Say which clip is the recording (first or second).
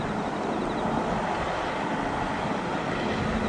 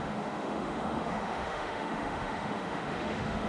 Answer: first